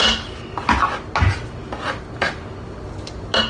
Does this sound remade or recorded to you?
recorded